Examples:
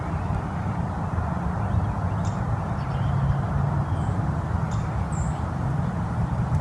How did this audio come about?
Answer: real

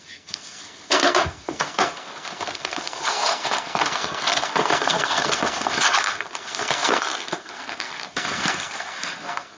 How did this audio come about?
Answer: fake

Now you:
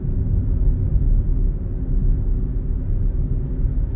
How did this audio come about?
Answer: real